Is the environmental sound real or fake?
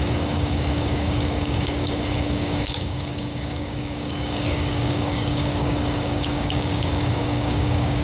fake